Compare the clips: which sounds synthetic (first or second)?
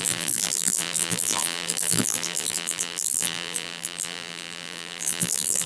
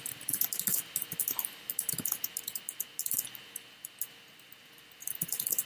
first